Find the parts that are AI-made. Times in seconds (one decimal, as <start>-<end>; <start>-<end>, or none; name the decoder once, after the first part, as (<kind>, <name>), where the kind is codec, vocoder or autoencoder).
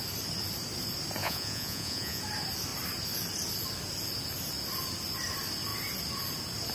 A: 1.2-2.2 (vocoder, Vocos)